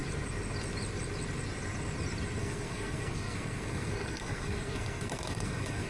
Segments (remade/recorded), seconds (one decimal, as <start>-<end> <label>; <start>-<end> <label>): 0.0-2.4 recorded; 2.4-5.9 remade

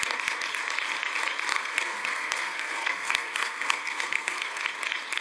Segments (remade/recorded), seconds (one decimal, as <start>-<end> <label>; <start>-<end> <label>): 0.0-1.5 recorded; 1.5-4.6 remade; 4.6-5.2 recorded

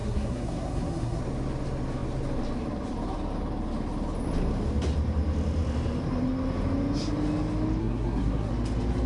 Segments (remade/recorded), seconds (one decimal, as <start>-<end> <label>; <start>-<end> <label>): 0.0-1.2 remade; 1.2-7.8 recorded; 7.8-8.5 remade; 8.5-9.1 recorded

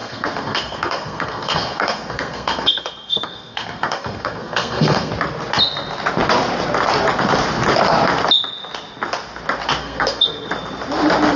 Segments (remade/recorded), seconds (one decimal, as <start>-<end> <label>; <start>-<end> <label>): 0.0-5.1 remade; 5.1-9.8 recorded; 9.8-10.5 remade; 10.5-11.4 recorded

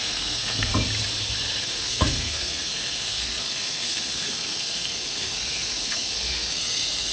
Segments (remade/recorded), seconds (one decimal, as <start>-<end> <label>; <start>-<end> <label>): 0.0-0.7 remade; 0.7-1.6 recorded; 1.6-7.1 remade

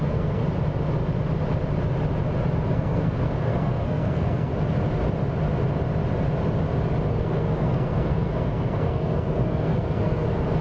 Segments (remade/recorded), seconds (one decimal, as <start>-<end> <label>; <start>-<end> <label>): 0.0-0.4 remade; 0.4-2.7 recorded; 2.7-4.5 remade; 4.5-7.1 recorded; 7.1-10.6 remade

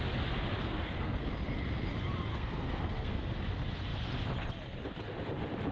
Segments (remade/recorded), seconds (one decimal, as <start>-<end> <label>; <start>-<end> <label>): 0.0-0.6 recorded; 0.6-1.3 remade; 1.3-2.3 recorded; 2.3-3.3 remade; 3.3-5.7 recorded